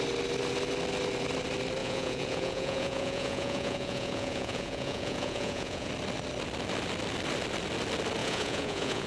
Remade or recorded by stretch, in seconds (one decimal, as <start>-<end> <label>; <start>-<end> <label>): 0.0-1.8 recorded; 1.8-5.9 remade; 5.9-8.2 recorded; 8.2-9.1 remade

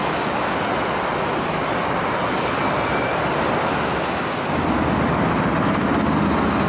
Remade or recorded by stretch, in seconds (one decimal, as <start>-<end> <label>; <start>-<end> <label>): 0.0-6.7 recorded

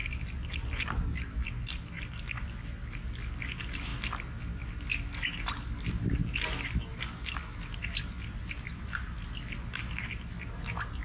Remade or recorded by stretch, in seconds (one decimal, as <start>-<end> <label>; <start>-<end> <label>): 0.0-11.0 recorded

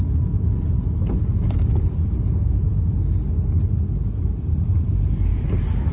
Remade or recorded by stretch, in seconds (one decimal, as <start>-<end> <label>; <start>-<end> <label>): 0.0-5.3 recorded; 5.3-5.9 remade